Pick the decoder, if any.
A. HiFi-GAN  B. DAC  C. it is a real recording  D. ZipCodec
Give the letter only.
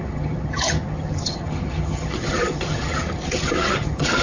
A